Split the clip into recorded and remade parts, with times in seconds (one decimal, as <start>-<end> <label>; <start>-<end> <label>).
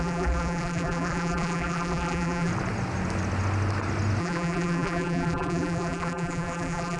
0.0-2.5 remade; 2.5-4.2 recorded; 4.2-7.0 remade